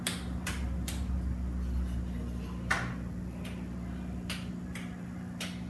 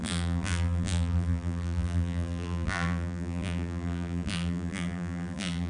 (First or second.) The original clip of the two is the first